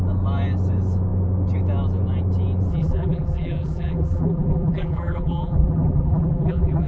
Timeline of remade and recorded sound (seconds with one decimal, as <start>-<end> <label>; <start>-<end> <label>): 0.0-2.7 recorded; 2.7-6.9 remade